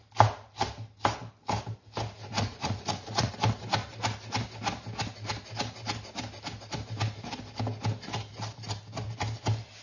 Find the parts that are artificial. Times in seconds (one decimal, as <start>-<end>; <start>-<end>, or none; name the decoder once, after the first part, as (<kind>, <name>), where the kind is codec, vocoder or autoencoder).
2.3-3.3 (vocoder, Vocos)